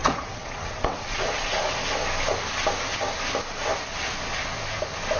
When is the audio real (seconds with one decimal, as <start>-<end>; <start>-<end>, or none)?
1.6-5.2